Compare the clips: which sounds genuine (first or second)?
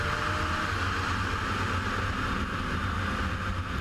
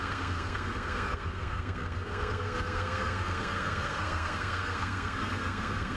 first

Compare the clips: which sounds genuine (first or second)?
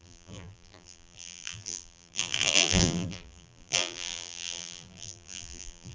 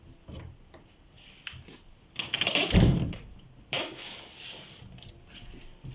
second